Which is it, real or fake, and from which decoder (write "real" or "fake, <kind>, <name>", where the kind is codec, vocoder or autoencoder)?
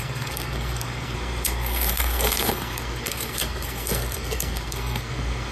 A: fake, codec, SNAC